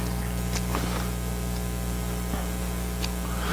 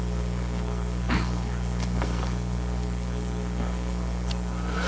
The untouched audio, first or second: first